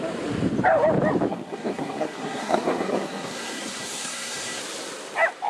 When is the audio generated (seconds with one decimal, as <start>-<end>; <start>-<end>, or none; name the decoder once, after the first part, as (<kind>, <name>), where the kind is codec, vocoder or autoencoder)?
1.3-4.6 (codec, SNAC)